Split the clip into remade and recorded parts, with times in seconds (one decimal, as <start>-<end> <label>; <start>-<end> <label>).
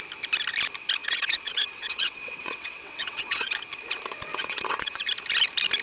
0.0-1.0 recorded; 1.0-3.5 remade; 3.5-4.3 recorded; 4.3-5.0 remade; 5.0-5.8 recorded